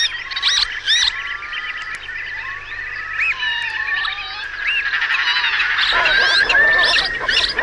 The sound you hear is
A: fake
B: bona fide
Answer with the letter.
B